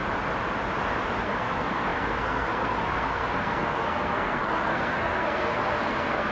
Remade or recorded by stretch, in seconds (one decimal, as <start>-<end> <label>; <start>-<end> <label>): 0.0-1.2 recorded; 1.2-6.3 remade